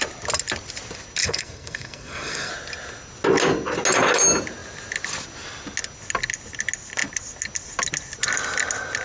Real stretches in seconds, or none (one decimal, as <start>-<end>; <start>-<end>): 0.0-1.2; 2.5-9.0